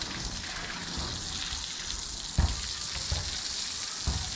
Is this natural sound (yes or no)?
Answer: yes